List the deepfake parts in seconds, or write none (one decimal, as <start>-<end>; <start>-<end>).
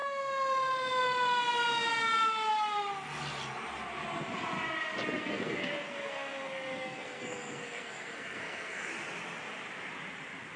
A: 5.2-8.9